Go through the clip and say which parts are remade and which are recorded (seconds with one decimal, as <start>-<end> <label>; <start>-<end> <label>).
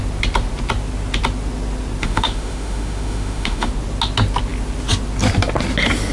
0.0-2.0 recorded; 2.0-3.7 remade; 3.7-6.1 recorded